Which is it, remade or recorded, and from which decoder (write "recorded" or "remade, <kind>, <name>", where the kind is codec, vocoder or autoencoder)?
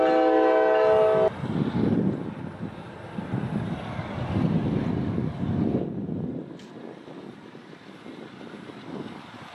recorded